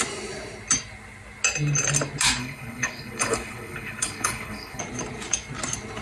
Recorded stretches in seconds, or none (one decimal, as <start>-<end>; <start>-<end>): 0.0-2.4; 4.8-6.0

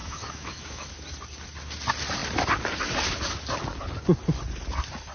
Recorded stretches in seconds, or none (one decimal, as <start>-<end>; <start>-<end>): 0.9-5.1